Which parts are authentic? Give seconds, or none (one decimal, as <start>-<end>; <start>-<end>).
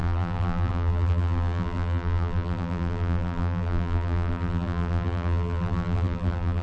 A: none